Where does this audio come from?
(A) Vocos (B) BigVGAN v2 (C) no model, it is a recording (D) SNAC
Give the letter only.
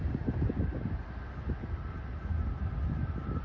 C